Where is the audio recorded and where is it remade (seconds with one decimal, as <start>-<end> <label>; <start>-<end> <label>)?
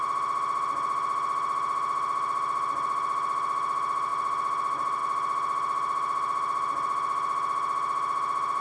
0.0-8.6 recorded